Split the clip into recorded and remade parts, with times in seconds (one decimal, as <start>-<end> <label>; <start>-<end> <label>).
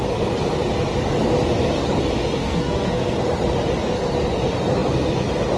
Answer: 0.0-2.4 recorded; 2.4-3.2 remade; 3.2-5.6 recorded